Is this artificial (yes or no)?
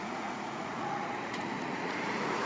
yes